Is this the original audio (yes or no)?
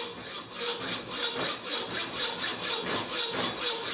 yes